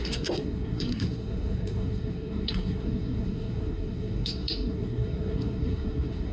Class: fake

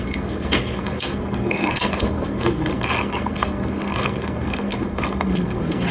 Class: fake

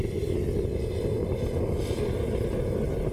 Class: real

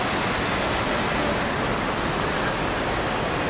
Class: real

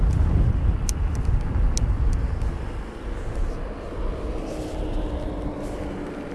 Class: real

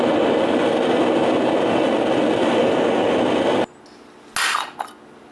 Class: real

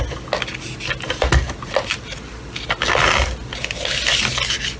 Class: real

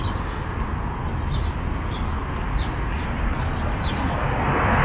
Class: real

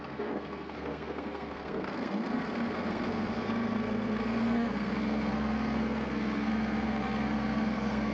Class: fake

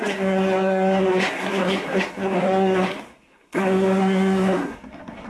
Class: fake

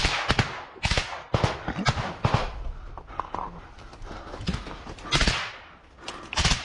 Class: real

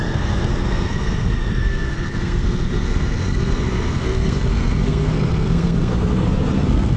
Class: fake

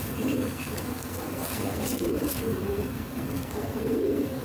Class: fake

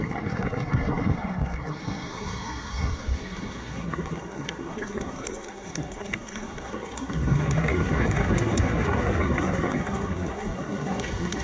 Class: fake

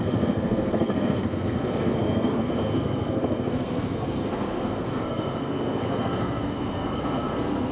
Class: fake